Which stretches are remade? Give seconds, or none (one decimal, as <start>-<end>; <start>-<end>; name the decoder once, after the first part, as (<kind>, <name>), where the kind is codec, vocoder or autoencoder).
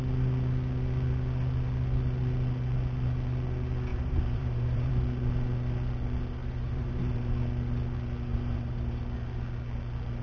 3.9-4.9 (vocoder, BigVGAN v2); 6.4-7.3; 8.3-9.0